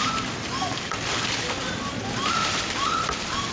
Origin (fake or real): real